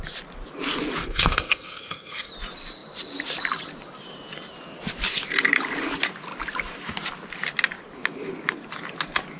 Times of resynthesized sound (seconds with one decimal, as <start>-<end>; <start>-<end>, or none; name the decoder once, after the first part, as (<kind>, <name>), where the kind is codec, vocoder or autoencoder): 1.0-2.3 (codec, SNAC)